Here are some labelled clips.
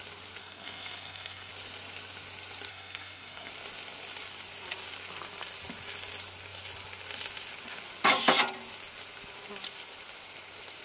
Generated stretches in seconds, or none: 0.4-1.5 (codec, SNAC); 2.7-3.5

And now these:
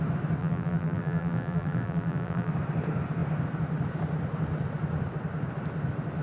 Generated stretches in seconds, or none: 0.4-2.5 (vocoder, BigVGAN v2)

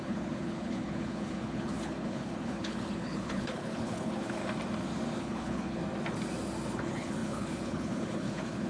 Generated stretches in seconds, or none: 0.0-4.4 (codec, HILCodec); 5.2-5.8; 6.7-8.7